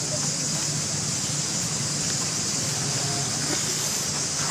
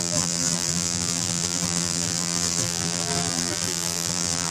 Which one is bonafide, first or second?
first